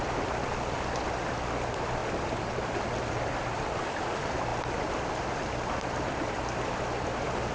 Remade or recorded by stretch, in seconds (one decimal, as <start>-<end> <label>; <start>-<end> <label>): 0.0-7.5 recorded